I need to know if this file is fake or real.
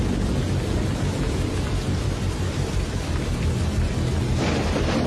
real